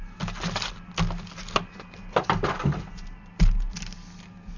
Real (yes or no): yes